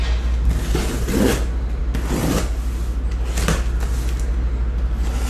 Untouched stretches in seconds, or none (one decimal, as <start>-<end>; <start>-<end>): 0.0-5.3